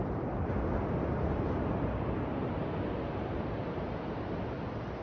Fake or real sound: real